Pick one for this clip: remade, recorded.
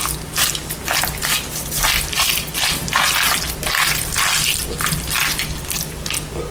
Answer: recorded